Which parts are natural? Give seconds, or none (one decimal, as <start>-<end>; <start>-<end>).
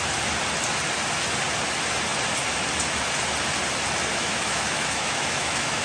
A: 0.0-4.1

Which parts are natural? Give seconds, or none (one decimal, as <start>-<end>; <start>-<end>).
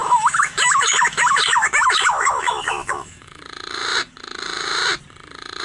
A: 3.4-5.6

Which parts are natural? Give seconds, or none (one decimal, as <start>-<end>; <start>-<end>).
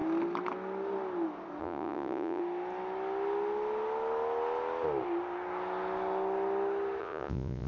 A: 0.0-1.6; 2.4-7.0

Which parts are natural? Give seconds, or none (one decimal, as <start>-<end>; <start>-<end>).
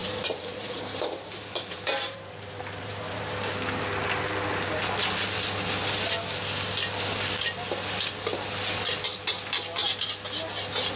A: 3.5-11.0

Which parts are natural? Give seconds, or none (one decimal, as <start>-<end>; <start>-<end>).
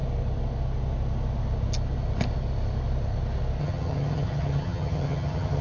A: 0.0-3.6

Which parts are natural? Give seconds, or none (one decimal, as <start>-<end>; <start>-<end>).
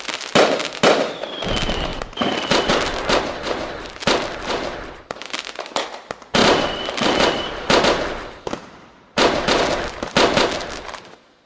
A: 0.0-1.9; 5.4-6.4; 9.6-11.5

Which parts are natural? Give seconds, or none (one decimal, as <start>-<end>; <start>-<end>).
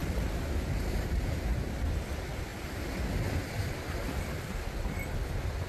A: 1.8-5.7